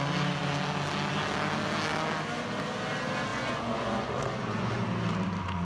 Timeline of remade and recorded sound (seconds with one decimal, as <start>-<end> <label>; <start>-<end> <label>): 0.0-3.3 recorded; 3.3-4.7 remade; 4.7-5.6 recorded